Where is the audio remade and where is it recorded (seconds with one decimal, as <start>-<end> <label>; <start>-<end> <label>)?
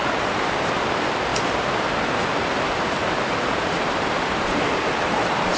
0.0-0.7 recorded; 0.7-1.3 remade; 1.3-2.3 recorded; 2.3-5.6 remade